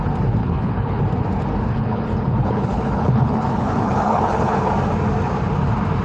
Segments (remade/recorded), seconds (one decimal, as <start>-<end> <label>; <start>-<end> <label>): 0.0-0.4 recorded; 0.4-1.0 remade; 1.0-1.7 recorded; 1.7-4.7 remade; 4.7-6.0 recorded